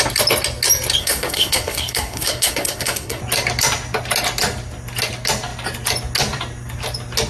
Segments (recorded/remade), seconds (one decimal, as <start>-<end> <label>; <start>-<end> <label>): 0.0-1.0 recorded; 1.0-3.2 remade; 3.2-7.3 recorded